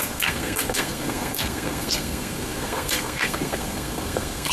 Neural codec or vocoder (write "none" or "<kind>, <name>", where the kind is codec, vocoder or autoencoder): codec, SNAC